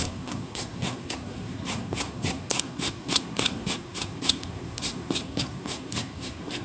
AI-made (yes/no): yes